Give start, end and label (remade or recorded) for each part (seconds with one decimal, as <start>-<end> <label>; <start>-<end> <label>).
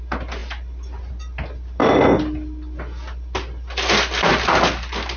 0.0-5.2 recorded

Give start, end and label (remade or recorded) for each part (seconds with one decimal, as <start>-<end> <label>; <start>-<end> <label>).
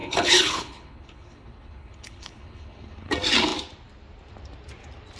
0.0-3.1 remade; 3.1-5.2 recorded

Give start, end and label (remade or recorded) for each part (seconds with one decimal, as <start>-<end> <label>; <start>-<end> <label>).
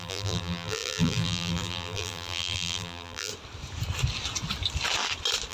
0.0-3.3 remade; 3.3-5.5 recorded